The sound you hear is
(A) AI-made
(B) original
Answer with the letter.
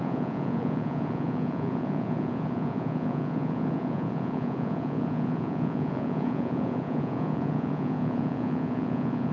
A